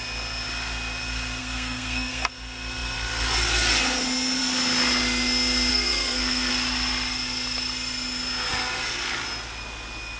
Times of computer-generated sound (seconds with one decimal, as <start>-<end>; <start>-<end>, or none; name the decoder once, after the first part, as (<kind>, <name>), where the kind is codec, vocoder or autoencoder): 1.4-2.3 (codec, SNAC); 5.7-6.5